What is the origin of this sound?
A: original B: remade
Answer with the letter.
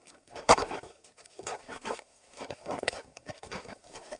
B